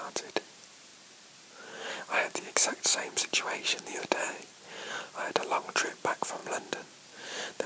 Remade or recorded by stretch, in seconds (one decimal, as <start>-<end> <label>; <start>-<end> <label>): 0.0-0.9 remade; 0.9-4.0 recorded; 4.0-4.5 remade; 4.5-5.6 recorded; 5.6-6.4 remade; 6.4-7.0 recorded; 7.0-7.7 remade

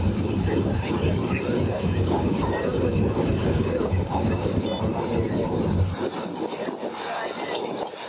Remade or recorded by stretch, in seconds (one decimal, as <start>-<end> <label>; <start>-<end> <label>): 0.0-1.7 recorded; 1.7-2.4 remade; 2.4-3.4 recorded; 3.4-4.6 remade; 4.6-8.1 recorded

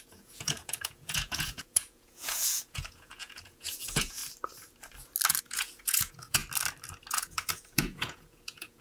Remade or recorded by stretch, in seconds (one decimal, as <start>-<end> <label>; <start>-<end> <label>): 0.0-4.2 remade; 4.2-5.4 recorded; 5.4-6.4 remade; 6.4-7.1 recorded; 7.1-8.8 remade

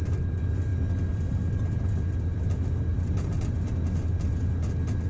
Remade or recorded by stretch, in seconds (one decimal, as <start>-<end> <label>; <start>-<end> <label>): 0.0-5.1 recorded